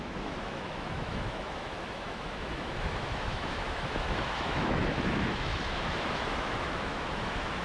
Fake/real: fake